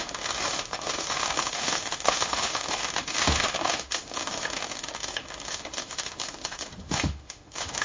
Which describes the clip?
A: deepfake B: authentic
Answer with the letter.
A